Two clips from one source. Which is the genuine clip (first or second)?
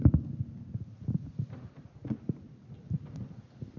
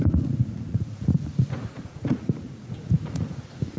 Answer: first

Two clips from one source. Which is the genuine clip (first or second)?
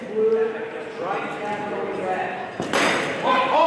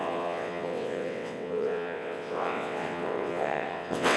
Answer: first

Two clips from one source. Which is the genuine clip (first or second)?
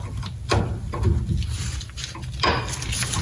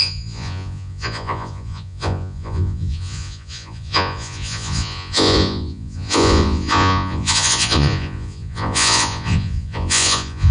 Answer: first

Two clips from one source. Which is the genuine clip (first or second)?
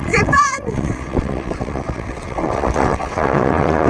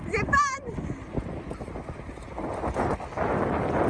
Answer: second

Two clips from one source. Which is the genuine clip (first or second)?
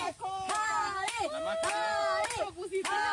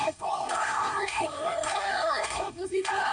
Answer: first